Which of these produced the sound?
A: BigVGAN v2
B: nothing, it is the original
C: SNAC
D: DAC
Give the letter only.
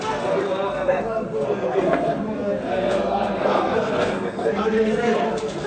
C